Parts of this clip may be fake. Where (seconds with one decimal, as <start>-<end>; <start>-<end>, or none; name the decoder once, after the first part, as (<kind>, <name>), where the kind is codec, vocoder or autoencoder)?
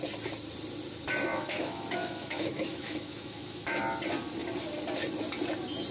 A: 1.3-3.8 (autoencoder, DAC-VAE)